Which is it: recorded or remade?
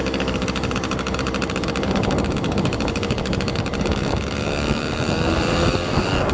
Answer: remade